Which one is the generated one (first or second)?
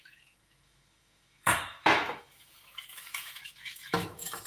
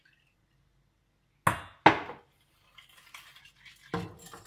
first